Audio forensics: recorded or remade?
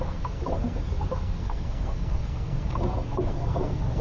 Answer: remade